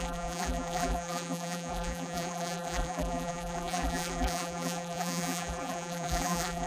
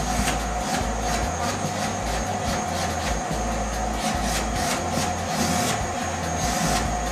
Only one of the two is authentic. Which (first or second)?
second